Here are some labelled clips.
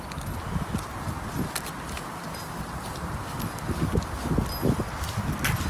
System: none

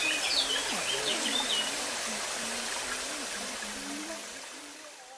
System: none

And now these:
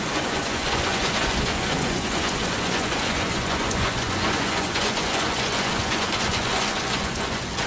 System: vocoder, Vocos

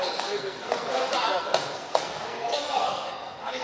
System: codec, SNAC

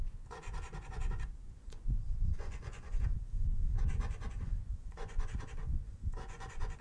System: vocoder, Vocos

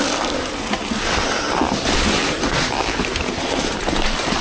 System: none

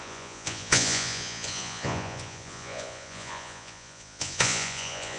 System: vocoder, Vocos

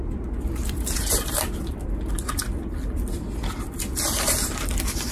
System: vocoder, BigVGAN v2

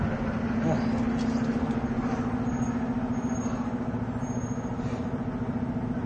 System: none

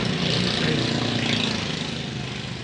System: none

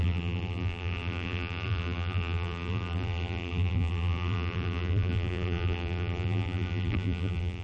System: vocoder, BigVGAN v2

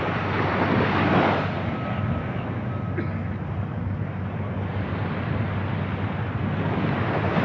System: none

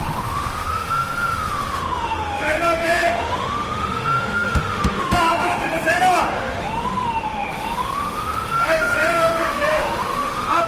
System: autoencoder, DAC-VAE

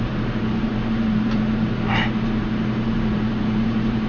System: vocoder, BigVGAN v2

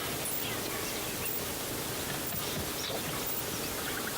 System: none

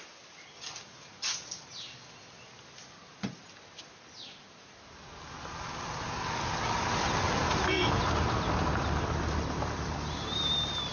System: none